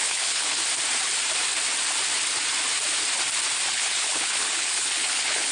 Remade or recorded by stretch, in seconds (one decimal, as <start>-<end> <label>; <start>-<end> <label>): 0.0-0.6 remade; 0.6-3.7 recorded; 3.7-5.5 remade